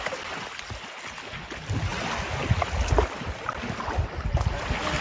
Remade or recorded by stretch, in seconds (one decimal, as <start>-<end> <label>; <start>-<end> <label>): 0.0-5.0 recorded